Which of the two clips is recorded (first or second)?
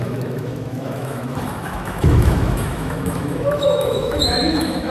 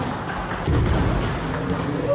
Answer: second